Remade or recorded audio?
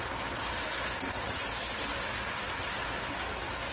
recorded